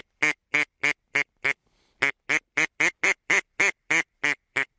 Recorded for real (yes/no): yes